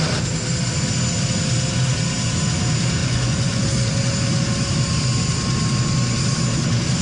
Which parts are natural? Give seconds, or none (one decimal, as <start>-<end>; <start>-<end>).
0.0-3.0; 3.6-7.0